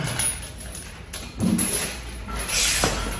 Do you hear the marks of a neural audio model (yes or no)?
no